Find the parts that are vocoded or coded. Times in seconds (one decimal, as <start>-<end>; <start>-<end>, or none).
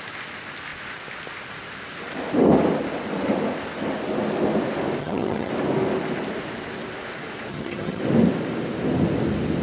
5.0-5.5; 7.5-8.0